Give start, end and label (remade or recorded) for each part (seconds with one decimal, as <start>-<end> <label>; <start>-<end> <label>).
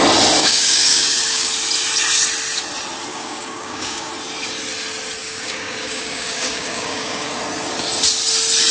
0.0-0.4 recorded; 0.4-1.5 remade; 1.5-3.1 recorded; 3.1-4.1 remade; 4.1-5.2 recorded; 5.2-7.3 remade; 7.3-8.7 recorded